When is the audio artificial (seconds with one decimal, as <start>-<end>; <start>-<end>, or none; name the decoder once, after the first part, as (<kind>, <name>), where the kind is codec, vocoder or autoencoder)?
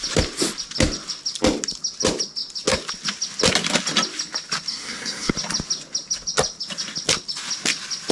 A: 4.7-5.3 (codec, SNAC)